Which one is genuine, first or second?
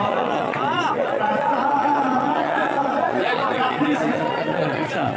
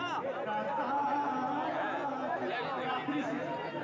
second